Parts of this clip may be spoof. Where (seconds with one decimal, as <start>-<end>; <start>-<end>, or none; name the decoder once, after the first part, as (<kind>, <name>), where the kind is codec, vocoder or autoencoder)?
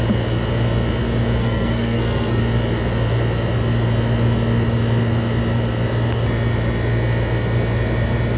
1.4-2.4 (codec, SNAC)